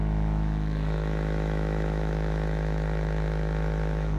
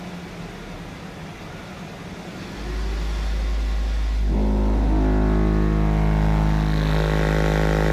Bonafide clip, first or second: second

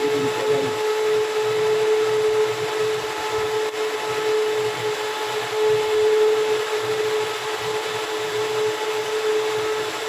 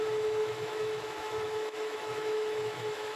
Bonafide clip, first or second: first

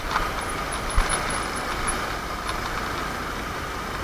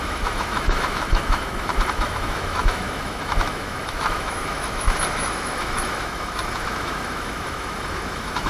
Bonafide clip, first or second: first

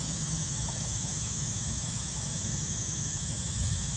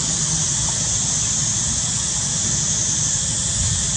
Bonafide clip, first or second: second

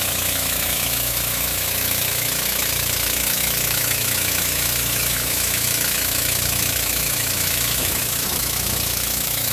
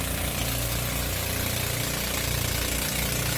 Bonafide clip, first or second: second